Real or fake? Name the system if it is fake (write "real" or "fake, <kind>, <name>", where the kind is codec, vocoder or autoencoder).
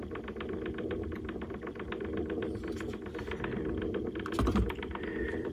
real